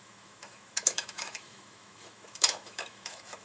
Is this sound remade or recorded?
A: remade